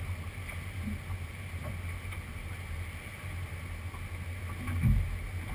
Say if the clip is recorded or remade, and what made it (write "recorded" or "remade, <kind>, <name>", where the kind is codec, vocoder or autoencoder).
recorded